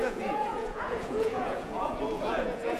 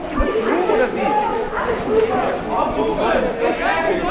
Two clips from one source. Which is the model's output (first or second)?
first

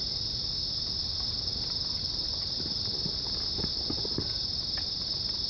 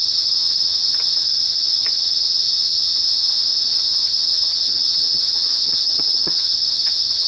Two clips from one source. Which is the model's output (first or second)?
second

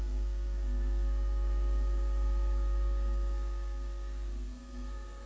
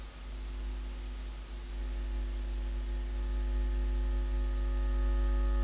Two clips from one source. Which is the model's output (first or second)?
first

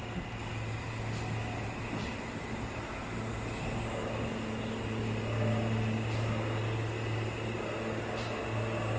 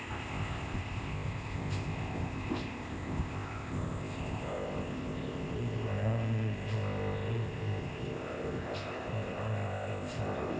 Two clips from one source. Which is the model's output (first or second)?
second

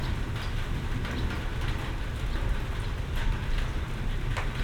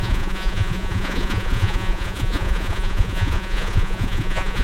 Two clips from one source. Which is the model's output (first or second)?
second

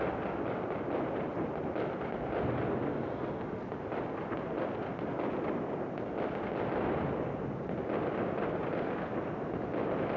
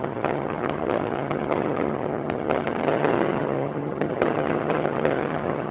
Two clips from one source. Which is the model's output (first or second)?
second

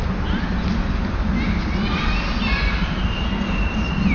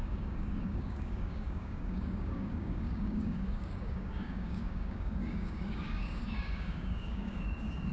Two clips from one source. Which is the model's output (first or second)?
second